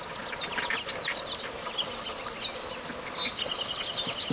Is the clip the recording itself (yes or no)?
yes